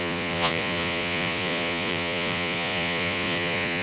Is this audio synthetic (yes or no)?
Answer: yes